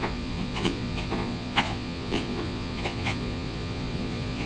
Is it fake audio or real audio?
fake